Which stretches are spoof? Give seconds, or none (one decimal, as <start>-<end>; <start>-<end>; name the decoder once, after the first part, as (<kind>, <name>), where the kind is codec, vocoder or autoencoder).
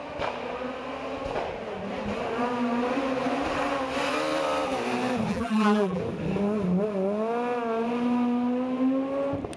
5.3-6.0 (vocoder, BigVGAN v2)